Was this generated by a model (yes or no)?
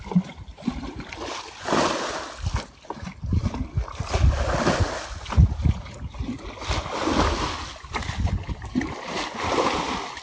no